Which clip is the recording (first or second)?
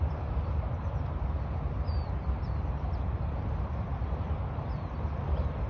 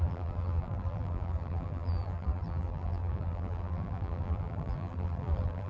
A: first